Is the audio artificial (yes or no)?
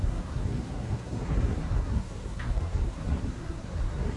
yes